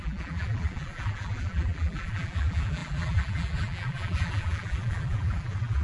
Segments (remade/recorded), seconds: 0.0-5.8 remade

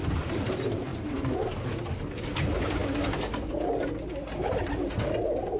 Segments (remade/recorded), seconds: 0.0-0.9 remade; 0.9-2.1 recorded; 2.1-2.8 remade; 2.8-5.6 recorded

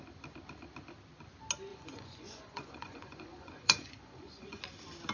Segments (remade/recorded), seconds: 0.0-1.7 recorded; 1.7-4.6 remade; 4.6-5.1 recorded

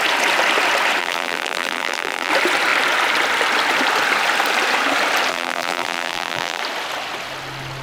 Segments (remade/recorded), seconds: 0.0-1.0 recorded; 1.0-2.3 remade; 2.3-5.3 recorded; 5.3-6.6 remade; 6.6-7.8 recorded

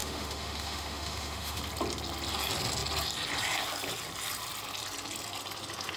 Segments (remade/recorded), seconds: 0.0-1.6 remade; 1.6-6.0 recorded